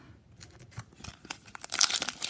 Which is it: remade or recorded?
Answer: recorded